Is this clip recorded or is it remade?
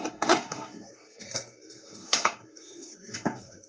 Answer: remade